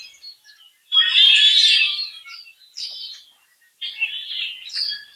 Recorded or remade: remade